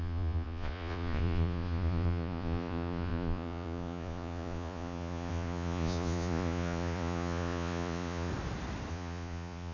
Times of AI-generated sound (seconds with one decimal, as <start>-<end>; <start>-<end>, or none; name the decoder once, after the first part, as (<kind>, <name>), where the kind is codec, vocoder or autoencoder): 0.0-8.3 (vocoder, Vocos); 8.9-9.7